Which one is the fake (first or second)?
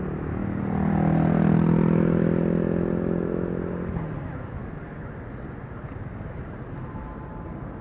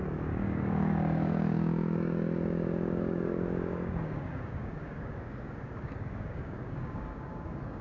second